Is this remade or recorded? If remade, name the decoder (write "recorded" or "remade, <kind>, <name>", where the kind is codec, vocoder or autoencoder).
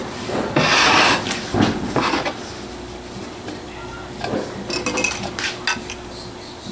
recorded